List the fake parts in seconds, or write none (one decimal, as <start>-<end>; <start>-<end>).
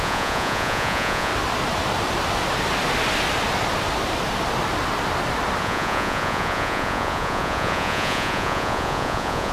0.0-1.3; 5.6-9.5